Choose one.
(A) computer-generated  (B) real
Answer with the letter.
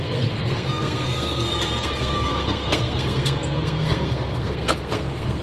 A